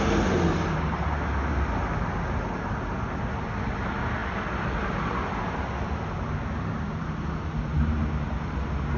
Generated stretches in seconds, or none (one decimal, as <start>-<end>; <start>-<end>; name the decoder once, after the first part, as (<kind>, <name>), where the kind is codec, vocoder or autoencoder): none